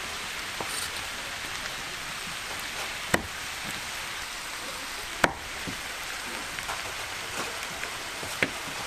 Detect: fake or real fake